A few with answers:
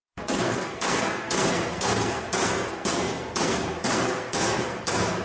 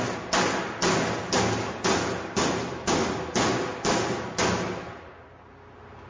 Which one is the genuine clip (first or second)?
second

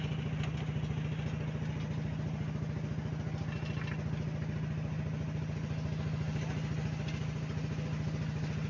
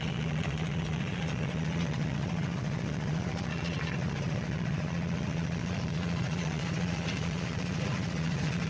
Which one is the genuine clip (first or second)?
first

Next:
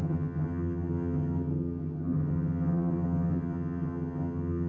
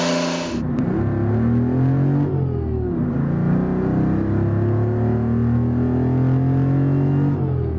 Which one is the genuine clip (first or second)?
second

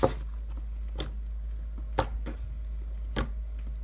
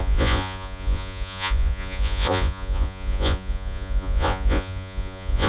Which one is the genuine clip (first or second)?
first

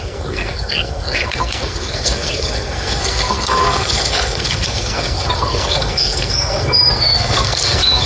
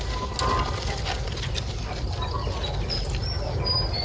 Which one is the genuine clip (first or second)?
second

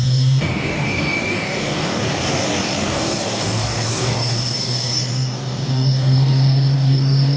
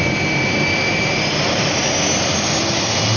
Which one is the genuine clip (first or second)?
second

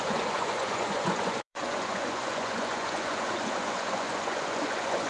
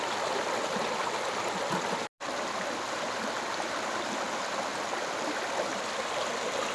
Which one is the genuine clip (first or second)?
second